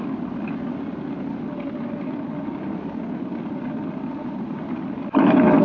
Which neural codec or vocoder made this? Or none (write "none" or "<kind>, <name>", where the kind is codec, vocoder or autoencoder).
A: none